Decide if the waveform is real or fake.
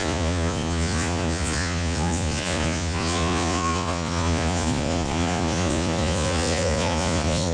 fake